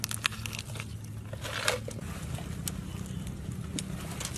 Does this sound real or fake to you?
real